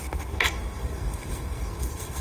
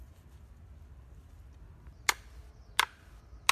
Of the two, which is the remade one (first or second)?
first